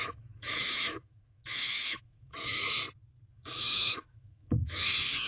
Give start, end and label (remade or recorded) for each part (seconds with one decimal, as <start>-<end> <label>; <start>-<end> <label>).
0.0-2.8 remade; 2.8-3.3 recorded; 3.3-5.3 remade